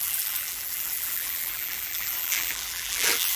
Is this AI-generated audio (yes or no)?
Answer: yes